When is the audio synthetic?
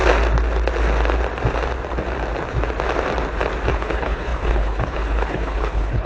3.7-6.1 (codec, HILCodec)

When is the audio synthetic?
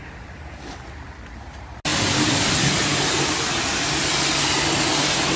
none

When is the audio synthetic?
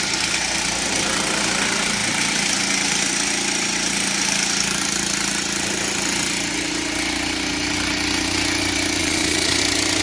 9.0-9.6 (vocoder, Vocos)